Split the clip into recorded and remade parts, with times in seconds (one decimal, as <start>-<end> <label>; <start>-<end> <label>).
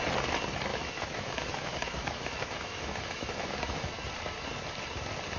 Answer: 0.0-0.7 recorded; 0.7-3.9 remade; 3.9-5.4 recorded